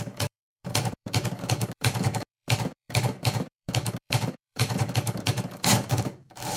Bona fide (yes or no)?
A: no